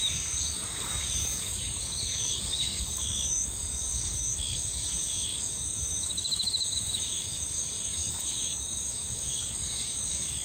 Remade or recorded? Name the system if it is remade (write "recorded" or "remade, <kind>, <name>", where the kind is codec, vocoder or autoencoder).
remade, codec, DAC